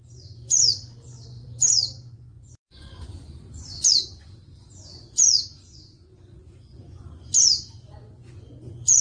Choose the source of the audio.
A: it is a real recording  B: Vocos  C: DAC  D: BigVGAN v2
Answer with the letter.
B